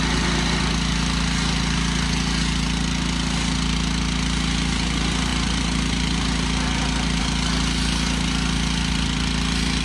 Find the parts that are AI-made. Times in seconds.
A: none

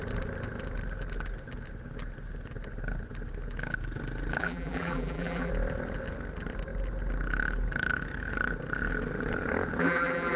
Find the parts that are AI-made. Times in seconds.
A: 4.4-5.5 (vocoder, BigVGAN v2); 9.8-10.4

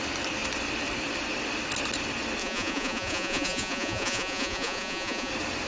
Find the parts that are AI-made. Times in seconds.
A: 2.4-5.3 (vocoder, Vocos)

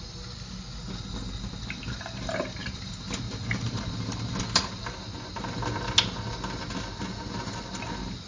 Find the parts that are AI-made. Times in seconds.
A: 2.6-3.9 (vocoder, BigVGAN v2)

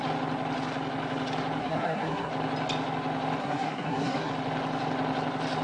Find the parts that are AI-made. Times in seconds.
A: 1.6-2.3 (codec, SNAC); 3.4-4.3

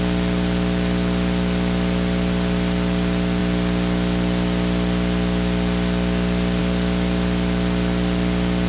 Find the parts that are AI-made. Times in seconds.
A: none

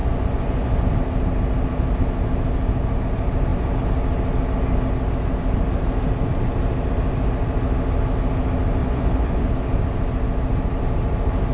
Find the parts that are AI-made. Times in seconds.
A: 0.0-0.8 (vocoder, Vocos); 8.8-9.5

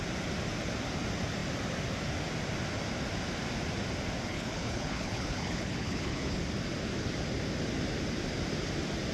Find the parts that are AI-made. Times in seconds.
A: 4.3-6.4 (codec, HILCodec)